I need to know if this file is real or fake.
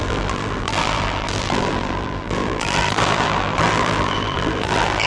fake